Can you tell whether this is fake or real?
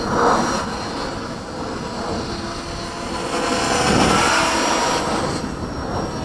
real